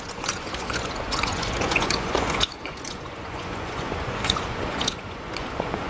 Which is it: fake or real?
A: fake